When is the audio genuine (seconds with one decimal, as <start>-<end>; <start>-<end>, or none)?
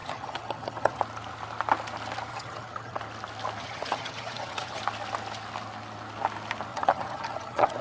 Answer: 1.0-2.3; 3.0-3.6; 4.8-6.7